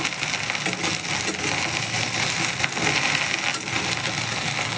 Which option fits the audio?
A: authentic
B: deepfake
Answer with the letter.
A